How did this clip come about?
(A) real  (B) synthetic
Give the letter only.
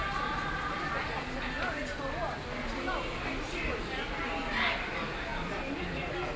A